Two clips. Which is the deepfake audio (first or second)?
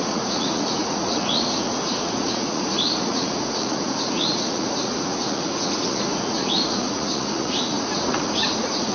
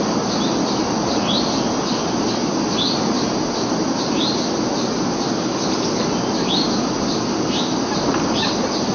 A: first